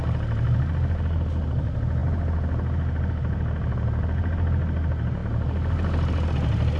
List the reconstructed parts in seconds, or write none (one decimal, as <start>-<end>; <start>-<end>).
none